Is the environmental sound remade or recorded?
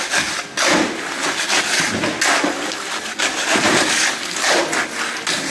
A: recorded